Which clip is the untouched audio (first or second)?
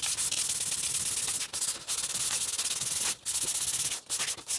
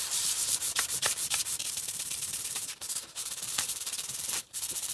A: first